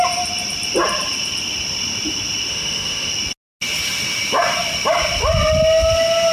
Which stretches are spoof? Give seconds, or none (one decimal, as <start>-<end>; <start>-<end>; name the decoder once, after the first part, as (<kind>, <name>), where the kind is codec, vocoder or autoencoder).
2.5-3.1 (autoencoder, DAC-VAE)